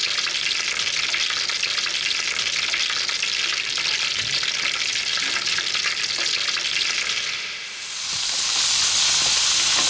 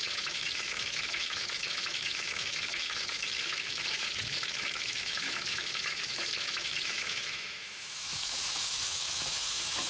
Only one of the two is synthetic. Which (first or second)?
second